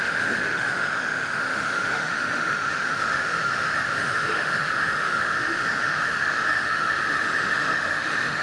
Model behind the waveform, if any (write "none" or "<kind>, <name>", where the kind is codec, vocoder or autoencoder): autoencoder, DAC-VAE